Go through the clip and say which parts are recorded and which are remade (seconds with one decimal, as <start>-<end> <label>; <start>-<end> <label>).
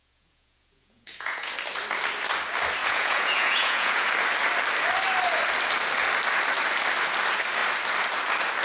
0.0-1.5 remade; 1.5-2.8 recorded; 2.8-4.1 remade; 4.1-8.6 recorded